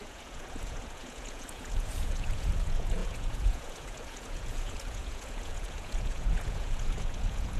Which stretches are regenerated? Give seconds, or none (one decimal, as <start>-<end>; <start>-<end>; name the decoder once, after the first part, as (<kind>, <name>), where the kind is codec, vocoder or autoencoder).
0.0-7.6 (vocoder, Vocos)